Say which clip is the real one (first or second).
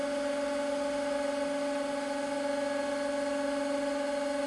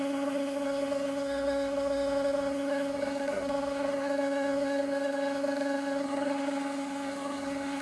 first